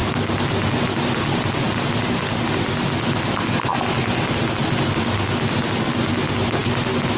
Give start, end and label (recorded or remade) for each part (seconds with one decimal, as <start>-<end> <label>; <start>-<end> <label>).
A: 0.0-7.2 recorded